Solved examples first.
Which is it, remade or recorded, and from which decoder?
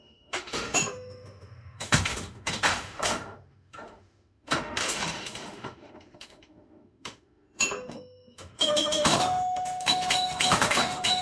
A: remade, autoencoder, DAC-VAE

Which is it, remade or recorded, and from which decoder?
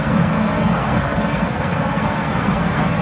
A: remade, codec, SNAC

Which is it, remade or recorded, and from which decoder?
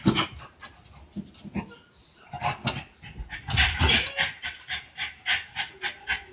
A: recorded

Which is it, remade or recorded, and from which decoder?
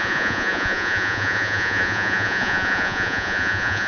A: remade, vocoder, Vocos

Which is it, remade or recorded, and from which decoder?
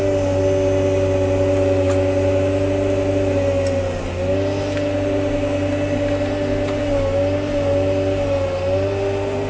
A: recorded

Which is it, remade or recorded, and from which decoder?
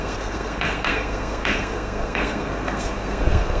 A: remade, codec, SNAC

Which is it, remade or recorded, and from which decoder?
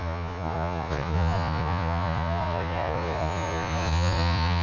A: remade, vocoder, Vocos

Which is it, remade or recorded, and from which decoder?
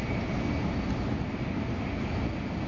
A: recorded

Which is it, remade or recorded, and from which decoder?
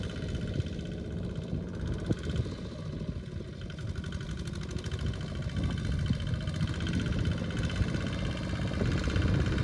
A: recorded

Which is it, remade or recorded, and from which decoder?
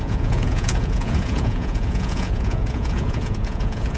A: remade, vocoder, Vocos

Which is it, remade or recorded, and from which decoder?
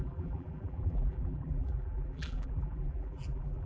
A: remade, vocoder, BigVGAN v2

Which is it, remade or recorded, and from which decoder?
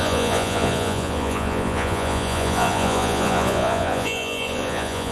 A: remade, vocoder, Vocos